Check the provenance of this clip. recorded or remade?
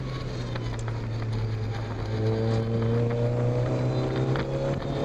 recorded